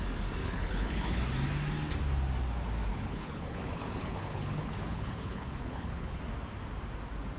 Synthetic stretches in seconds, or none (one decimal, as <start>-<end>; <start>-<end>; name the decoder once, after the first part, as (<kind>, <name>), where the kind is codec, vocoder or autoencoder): 0.4-1.2 (codec, HILCodec); 2.9-6.2